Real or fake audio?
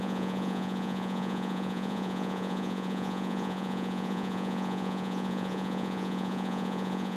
fake